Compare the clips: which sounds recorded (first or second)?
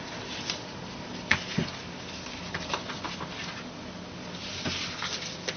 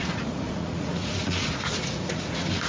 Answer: first